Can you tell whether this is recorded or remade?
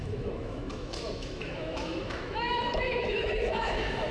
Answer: remade